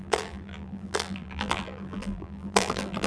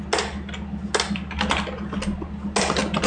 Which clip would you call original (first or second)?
second